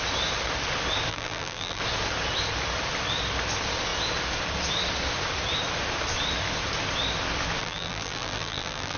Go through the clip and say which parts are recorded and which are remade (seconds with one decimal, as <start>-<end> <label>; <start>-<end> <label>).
0.0-1.1 recorded; 1.1-1.8 remade; 1.8-7.6 recorded; 7.6-9.0 remade